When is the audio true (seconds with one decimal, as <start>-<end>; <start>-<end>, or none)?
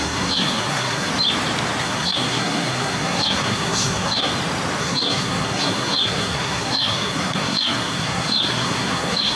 1.1-1.8; 4.3-4.8